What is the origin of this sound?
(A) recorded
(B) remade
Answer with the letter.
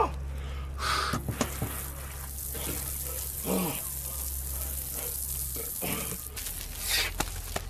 A